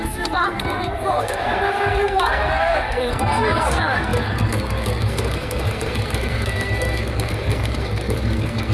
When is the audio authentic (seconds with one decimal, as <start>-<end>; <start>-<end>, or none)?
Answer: none